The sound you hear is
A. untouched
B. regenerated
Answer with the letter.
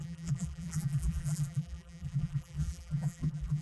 B